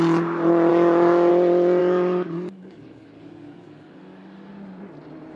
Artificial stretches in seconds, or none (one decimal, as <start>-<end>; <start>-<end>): 0.7-1.3; 1.8-4.5